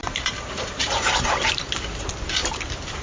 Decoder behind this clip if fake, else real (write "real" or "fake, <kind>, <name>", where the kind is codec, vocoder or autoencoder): real